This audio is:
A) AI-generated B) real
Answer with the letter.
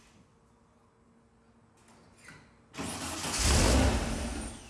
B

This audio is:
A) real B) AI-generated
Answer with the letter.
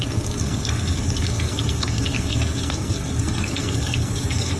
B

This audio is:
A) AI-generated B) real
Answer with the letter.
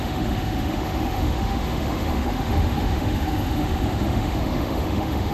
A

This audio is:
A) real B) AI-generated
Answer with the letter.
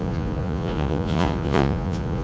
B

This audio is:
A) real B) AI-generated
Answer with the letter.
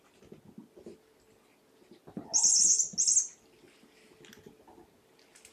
A